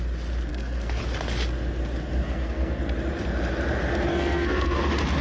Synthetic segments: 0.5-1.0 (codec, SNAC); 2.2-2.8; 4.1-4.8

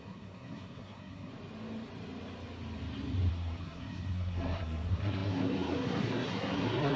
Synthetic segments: 0.0-1.3 (codec, SNAC); 3.3-7.0